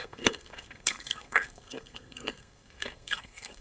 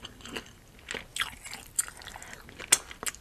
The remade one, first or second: first